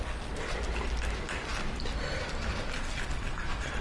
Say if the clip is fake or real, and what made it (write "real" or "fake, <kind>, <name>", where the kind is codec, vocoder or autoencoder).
real